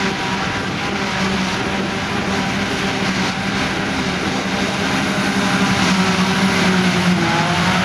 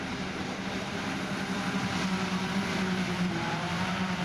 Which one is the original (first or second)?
first